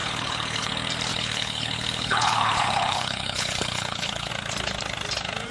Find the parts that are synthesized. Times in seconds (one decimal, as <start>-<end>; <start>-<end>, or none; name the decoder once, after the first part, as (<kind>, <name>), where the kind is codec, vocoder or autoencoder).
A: 0.0-0.7 (codec, HILCodec); 1.1-4.3